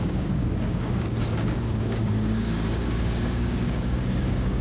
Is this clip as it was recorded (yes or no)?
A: no